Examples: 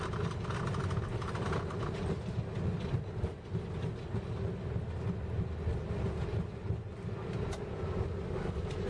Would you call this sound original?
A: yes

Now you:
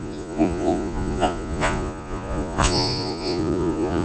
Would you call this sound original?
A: no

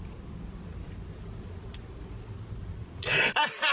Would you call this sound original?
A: yes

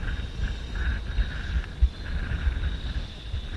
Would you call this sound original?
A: yes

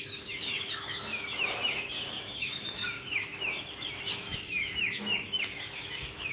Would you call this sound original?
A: no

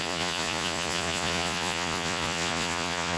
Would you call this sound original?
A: no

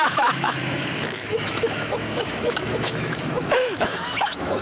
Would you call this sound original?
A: no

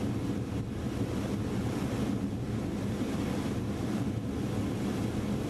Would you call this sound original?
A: yes